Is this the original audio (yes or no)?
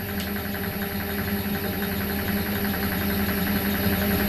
yes